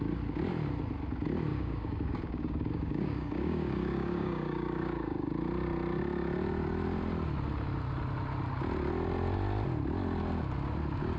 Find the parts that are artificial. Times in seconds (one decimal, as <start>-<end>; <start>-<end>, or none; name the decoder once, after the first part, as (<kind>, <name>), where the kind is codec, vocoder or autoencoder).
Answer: 1.5-5.3 (codec, DAC)